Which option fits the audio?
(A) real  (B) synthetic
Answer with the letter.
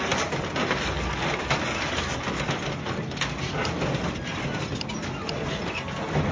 A